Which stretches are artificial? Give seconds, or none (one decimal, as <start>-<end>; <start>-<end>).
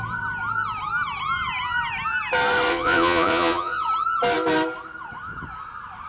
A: 2.7-3.9